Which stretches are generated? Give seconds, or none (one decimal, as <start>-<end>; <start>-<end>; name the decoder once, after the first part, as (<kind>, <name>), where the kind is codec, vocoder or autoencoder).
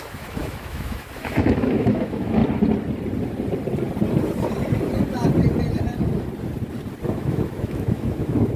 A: 0.0-2.4 (autoencoder, DAC-VAE); 7.1-8.6